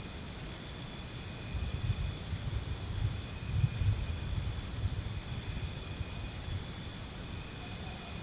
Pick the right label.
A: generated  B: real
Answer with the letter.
B